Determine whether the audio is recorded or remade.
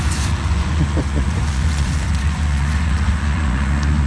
remade